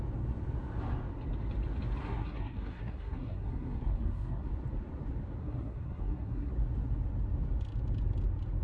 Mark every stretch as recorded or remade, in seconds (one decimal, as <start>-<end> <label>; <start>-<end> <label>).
0.0-2.0 recorded; 2.0-4.5 remade; 4.5-5.4 recorded; 5.4-6.5 remade; 6.5-8.6 recorded